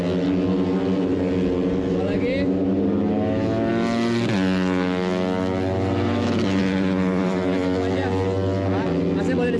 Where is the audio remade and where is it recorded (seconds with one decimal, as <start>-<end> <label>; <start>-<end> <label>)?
0.0-9.6 recorded